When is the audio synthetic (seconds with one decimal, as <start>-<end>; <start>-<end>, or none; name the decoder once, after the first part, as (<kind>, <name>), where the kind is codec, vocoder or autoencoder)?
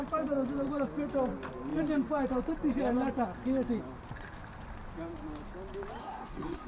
6.0-6.7 (codec, SNAC)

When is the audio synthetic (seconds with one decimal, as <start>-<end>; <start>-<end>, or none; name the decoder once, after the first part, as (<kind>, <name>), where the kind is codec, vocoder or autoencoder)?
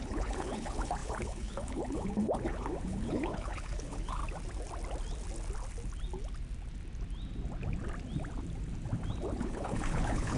0.0-4.2 (codec, HILCodec); 9.4-10.4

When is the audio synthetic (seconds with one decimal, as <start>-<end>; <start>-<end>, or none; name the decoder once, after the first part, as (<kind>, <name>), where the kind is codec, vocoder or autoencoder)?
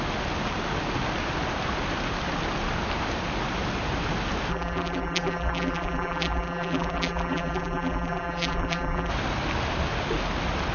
4.5-9.1 (vocoder, BigVGAN v2)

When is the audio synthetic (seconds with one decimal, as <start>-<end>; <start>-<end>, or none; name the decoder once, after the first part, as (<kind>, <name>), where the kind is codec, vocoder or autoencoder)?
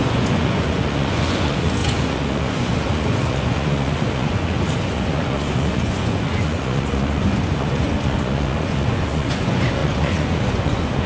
0.0-11.1 (vocoder, Vocos)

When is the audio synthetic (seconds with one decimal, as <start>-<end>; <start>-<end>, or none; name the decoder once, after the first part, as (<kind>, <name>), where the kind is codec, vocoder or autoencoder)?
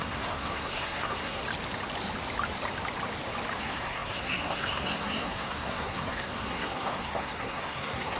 0.0-1.4 (codec, SNAC); 3.6-8.2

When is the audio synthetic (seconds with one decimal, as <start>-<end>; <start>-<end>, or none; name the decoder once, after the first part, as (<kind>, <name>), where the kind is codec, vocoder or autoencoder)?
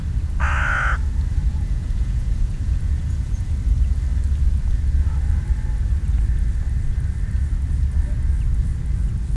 1.5-3.5 (vocoder, Vocos)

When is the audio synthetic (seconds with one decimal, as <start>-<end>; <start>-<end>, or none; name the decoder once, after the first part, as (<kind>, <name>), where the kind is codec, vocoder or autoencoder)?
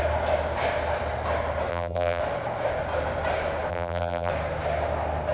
1.7-2.2 (vocoder, BigVGAN v2); 3.7-4.3